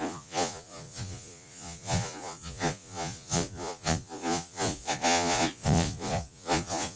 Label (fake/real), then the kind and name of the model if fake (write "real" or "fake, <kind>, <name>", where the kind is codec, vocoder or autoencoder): fake, vocoder, Vocos